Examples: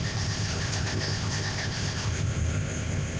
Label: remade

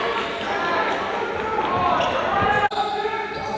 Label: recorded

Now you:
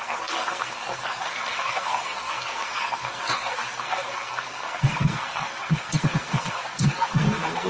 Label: remade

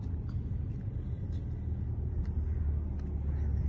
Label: recorded